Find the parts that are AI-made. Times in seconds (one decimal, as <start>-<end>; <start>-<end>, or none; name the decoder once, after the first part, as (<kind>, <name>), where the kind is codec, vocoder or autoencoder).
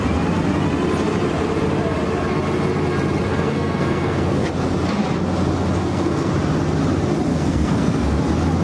3.3-4.5 (codec, SNAC); 5.8-6.3; 7.3-8.2